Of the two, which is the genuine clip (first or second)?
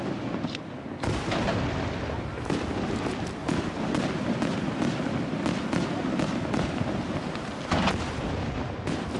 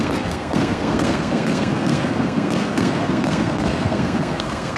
first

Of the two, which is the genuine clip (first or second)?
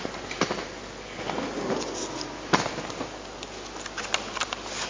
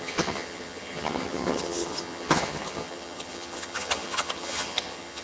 first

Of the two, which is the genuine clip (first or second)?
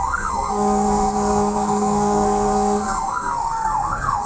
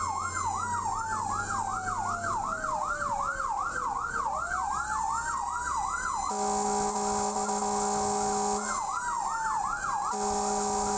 second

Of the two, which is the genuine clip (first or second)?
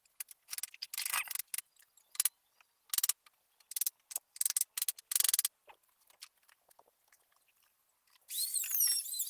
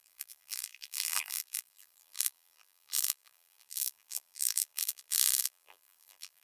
first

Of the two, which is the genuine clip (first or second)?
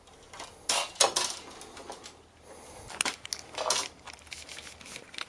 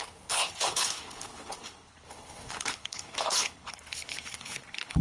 first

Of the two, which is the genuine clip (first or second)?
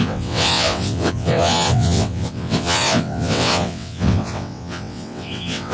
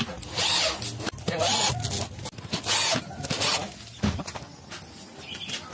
second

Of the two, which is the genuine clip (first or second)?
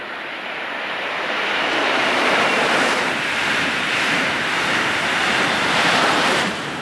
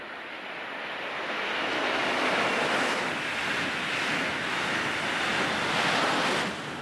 second